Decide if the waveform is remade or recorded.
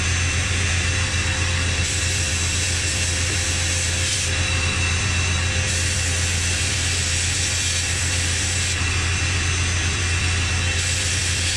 recorded